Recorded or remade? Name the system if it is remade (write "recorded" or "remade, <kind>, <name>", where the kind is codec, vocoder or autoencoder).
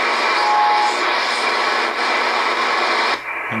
recorded